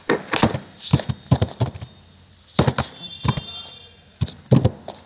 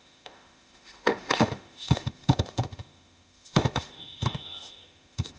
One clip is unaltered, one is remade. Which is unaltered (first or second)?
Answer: first